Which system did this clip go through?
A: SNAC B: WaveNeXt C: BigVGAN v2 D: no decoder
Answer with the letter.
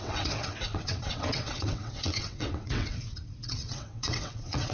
B